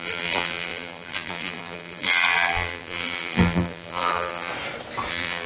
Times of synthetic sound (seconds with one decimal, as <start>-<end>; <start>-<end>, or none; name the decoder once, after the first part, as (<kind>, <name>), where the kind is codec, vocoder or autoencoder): 0.0-4.5 (vocoder, BigVGAN v2); 5.1-5.5